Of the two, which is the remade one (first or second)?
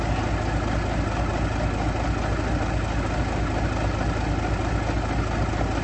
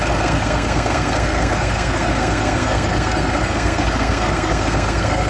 second